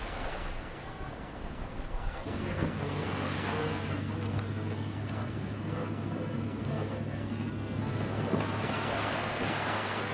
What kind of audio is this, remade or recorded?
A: remade